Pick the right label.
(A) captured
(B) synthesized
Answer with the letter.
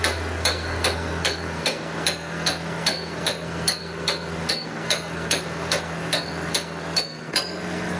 B